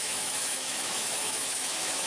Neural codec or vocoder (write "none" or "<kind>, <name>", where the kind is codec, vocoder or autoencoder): autoencoder, DAC-VAE